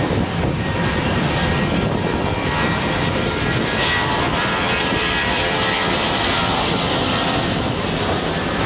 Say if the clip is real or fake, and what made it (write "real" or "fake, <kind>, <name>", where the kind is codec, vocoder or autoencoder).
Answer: fake, vocoder, BigVGAN v2